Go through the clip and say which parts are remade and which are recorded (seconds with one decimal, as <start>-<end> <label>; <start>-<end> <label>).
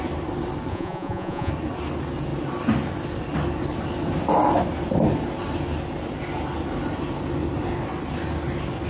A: 0.0-0.7 recorded; 0.7-1.5 remade; 1.5-8.9 recorded